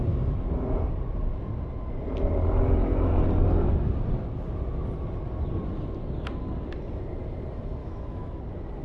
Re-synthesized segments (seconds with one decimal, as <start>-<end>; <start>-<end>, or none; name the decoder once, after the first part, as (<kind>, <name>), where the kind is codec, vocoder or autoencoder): 7.8-8.4 (autoencoder, DAC-VAE)